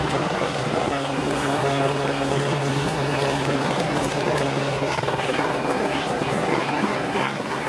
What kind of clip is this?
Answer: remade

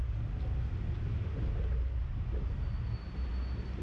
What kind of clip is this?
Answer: recorded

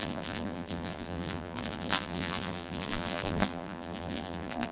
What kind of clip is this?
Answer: remade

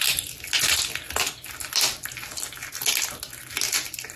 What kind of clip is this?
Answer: recorded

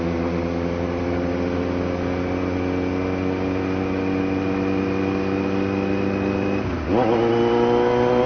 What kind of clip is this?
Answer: recorded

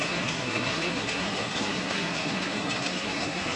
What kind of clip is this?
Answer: remade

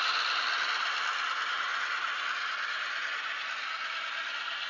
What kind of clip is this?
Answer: recorded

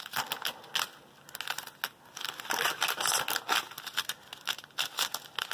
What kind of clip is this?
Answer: recorded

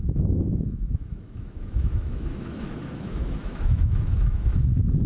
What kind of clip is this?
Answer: remade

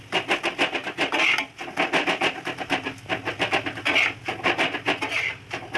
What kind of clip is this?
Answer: recorded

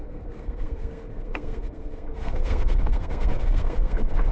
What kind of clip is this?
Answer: remade